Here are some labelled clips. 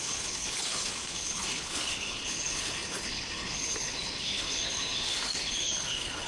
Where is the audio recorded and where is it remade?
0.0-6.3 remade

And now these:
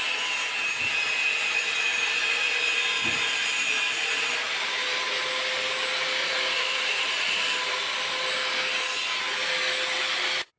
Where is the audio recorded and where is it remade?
0.0-6.2 recorded; 6.2-7.4 remade; 7.4-10.6 recorded

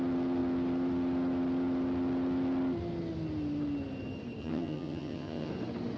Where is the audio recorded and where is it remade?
0.0-4.4 recorded; 4.4-5.5 remade; 5.5-6.0 recorded